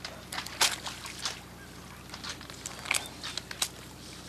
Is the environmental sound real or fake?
real